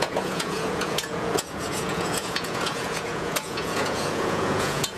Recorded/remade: remade